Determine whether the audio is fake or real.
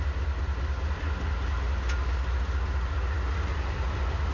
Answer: real